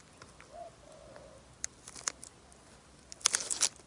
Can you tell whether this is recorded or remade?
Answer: recorded